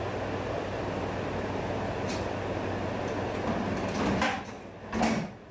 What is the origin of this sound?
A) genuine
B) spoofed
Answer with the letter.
A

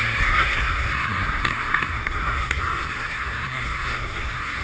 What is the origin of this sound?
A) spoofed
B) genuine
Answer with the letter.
A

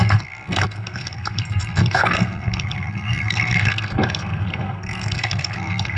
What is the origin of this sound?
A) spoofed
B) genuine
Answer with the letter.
A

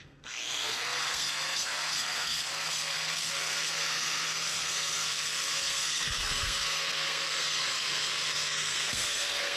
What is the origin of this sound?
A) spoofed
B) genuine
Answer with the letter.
A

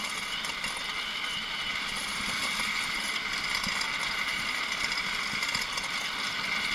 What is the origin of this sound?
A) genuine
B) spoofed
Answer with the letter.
A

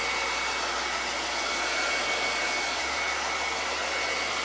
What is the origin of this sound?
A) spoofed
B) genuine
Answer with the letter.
B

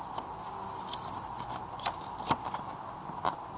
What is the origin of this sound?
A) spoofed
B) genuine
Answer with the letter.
B